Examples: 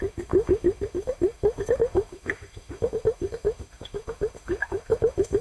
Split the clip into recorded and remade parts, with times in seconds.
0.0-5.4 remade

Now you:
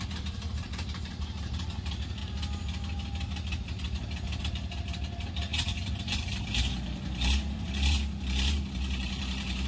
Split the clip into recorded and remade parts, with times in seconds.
0.0-2.2 remade; 2.2-4.4 recorded; 4.4-9.7 remade

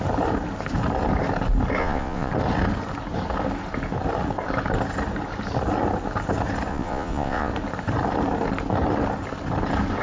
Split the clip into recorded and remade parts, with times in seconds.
0.0-1.8 recorded; 1.8-2.3 remade; 2.3-6.7 recorded; 6.7-7.5 remade; 7.5-10.0 recorded